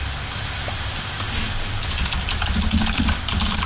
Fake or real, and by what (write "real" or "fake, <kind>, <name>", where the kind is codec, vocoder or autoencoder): real